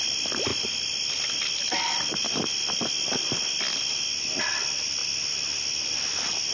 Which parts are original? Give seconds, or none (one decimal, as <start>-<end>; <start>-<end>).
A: 0.0-6.5